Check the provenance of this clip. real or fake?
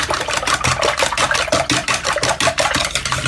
real